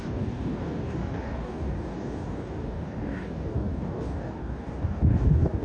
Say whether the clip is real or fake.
fake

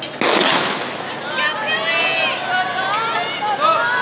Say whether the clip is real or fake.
real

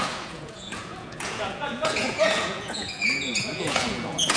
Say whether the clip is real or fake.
fake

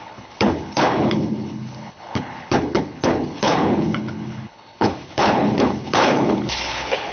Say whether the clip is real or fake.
fake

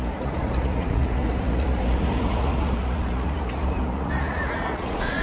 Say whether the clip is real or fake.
fake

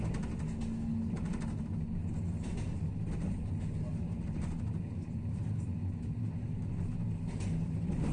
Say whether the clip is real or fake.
real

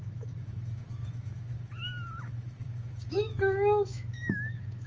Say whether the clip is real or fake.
fake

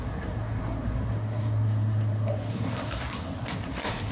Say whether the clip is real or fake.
fake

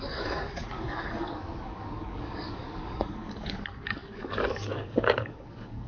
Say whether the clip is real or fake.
fake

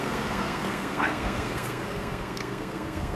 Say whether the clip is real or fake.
fake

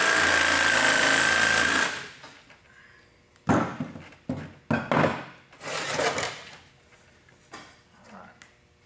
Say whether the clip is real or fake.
real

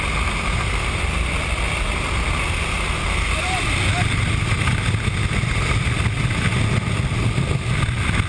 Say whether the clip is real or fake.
real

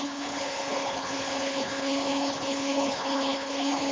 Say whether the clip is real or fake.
fake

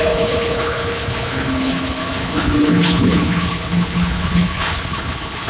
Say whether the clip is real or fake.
fake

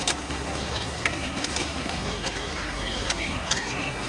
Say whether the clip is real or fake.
fake